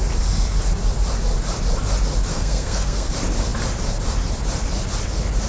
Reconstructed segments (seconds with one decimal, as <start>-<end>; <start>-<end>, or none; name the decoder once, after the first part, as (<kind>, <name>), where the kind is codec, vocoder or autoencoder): 2.3-3.1 (codec, SNAC)